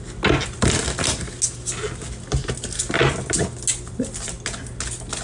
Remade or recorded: recorded